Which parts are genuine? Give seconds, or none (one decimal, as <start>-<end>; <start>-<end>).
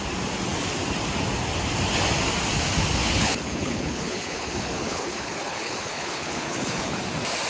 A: 0.0-3.0; 7.0-7.5